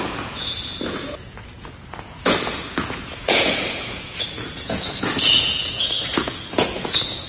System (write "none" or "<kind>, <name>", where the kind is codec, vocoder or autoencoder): vocoder, Vocos